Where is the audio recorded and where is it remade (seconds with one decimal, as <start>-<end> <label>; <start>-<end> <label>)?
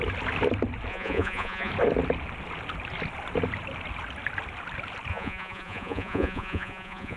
0.0-0.9 recorded; 0.9-1.7 remade; 1.7-5.1 recorded; 5.1-7.2 remade